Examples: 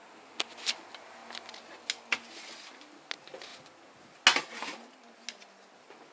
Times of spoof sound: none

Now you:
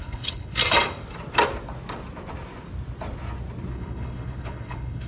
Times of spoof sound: 0.0-0.6 (codec, HILCodec); 3.7-5.1

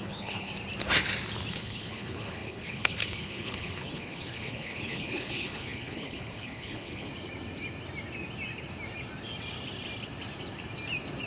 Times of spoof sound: 0.0-0.5 (codec, HILCodec); 1.5-7.1

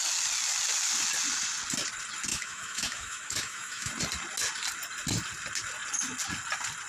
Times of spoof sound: 2.3-3.9 (autoencoder, DAC-VAE)

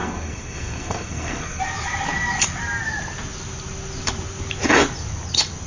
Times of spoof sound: 0.0-1.6 (codec, SNAC)